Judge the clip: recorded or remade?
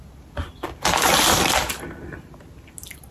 recorded